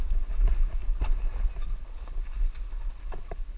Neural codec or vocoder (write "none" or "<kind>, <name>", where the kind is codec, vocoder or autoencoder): none